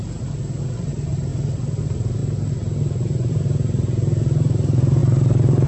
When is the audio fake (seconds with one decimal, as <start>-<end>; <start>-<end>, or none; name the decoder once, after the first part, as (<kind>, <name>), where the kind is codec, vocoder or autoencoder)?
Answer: 0.8-1.3 (vocoder, BigVGAN v2); 1.8-2.2; 3.3-5.0

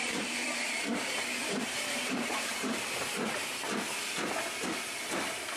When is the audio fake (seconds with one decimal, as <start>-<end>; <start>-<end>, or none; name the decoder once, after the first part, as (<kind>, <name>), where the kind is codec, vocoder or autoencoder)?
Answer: 0.0-2.8 (vocoder, BigVGAN v2)

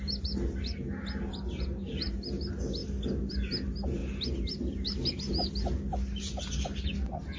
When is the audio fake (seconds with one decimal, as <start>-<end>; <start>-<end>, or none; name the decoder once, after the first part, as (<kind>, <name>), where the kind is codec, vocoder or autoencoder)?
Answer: 1.3-1.9 (vocoder, BigVGAN v2)

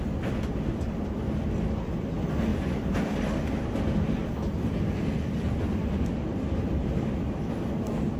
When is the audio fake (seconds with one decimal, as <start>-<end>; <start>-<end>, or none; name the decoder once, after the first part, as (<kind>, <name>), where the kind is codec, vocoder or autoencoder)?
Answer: none

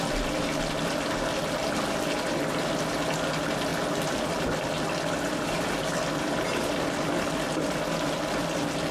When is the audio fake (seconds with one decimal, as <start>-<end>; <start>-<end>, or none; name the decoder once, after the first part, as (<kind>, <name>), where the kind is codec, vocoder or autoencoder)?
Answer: none

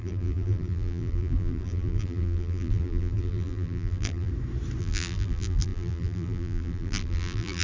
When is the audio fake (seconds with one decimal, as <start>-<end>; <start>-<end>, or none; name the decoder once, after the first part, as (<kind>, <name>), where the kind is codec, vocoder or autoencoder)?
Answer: 0.0-4.3 (vocoder, BigVGAN v2); 4.8-7.6